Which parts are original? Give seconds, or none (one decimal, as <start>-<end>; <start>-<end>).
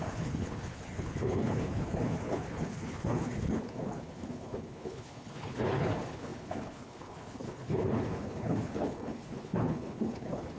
none